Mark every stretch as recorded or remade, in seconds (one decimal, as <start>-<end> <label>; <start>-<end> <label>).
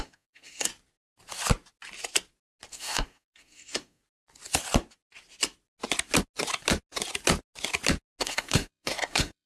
0.0-0.7 remade; 0.7-2.7 recorded; 2.7-4.0 remade; 4.0-8.2 recorded; 8.2-9.5 remade